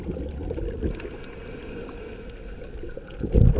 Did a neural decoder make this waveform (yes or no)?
no